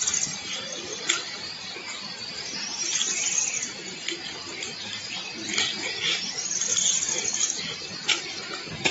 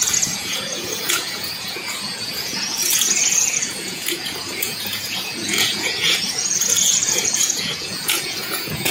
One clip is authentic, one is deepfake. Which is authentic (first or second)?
first